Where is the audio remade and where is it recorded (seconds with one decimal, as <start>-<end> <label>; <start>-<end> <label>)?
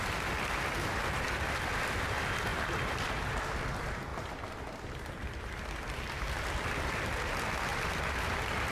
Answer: 0.0-2.5 recorded; 2.5-3.1 remade; 3.1-4.1 recorded; 4.1-6.5 remade; 6.5-7.7 recorded; 7.7-8.7 remade